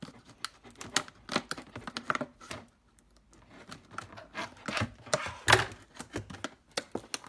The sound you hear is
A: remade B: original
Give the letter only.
B